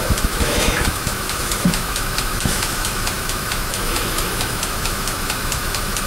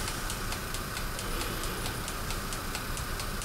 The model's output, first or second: first